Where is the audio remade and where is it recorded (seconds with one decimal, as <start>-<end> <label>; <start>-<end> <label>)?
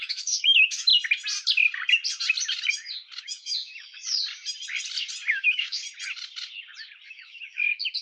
0.0-0.9 remade; 0.9-3.2 recorded; 3.2-4.0 remade; 4.0-5.3 recorded; 5.3-5.8 remade; 5.8-7.1 recorded; 7.1-8.0 remade